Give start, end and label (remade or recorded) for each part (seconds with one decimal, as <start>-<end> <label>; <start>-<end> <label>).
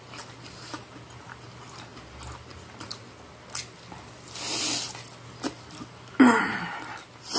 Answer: 0.0-7.4 recorded